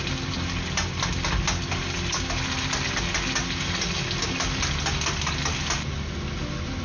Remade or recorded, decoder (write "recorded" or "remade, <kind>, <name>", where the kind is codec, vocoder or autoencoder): recorded